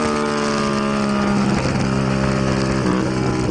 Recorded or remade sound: recorded